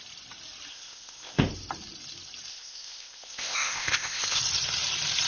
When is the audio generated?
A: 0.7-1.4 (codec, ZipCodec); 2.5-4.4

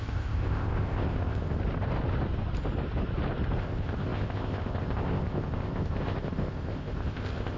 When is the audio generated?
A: 0.0-1.6 (codec, ZipCodec); 3.6-7.6

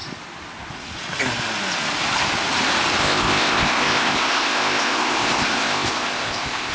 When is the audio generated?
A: 3.0-6.7 (codec, ZipCodec)